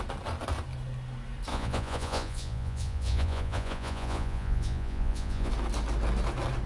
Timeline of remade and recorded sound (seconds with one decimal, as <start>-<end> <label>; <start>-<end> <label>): 0.0-1.5 recorded; 1.5-5.5 remade; 5.5-6.7 recorded